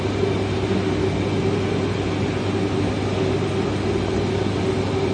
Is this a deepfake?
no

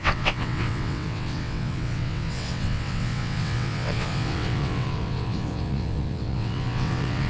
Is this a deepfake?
yes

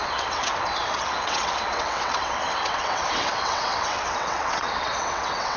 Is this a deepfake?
yes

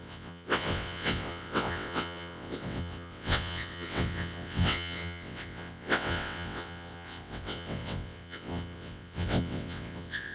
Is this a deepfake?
yes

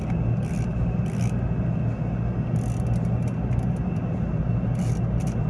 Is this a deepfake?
no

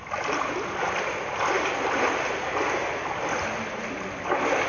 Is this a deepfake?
no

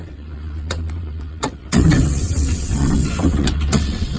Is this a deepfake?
yes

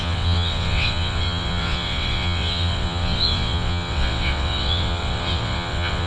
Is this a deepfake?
yes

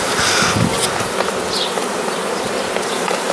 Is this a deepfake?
no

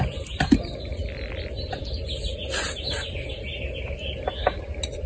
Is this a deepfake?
no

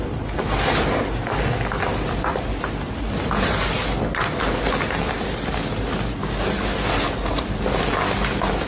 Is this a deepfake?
no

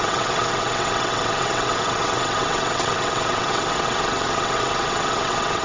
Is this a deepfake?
yes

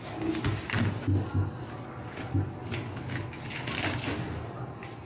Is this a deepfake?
no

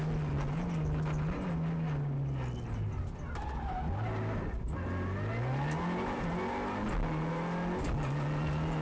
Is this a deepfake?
no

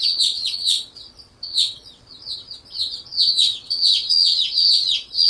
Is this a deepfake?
yes